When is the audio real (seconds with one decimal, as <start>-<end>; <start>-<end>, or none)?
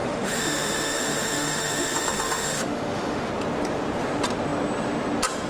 3.3-5.5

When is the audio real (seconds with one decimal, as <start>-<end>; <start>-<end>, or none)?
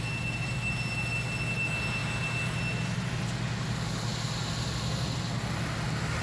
0.0-6.2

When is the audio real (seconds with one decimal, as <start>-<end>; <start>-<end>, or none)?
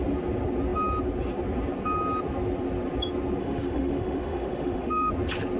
0.0-3.4; 5.1-5.6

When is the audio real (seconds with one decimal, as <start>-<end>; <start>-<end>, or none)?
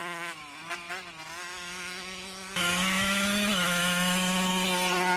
0.6-1.4; 4.5-5.2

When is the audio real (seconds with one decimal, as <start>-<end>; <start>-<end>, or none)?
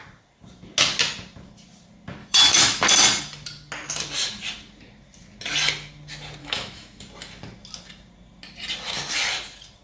0.0-2.2; 2.8-6.4; 7.0-9.8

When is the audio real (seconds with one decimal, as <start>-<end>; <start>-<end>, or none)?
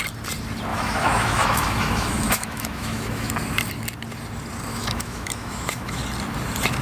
0.0-0.7; 3.3-4.7; 6.0-6.8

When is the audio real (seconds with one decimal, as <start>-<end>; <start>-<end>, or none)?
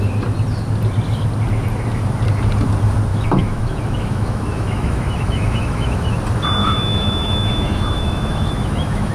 0.0-3.1; 6.1-6.6